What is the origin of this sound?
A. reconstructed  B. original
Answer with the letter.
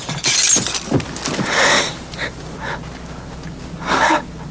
B